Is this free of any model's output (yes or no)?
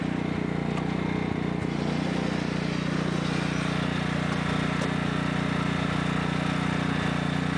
yes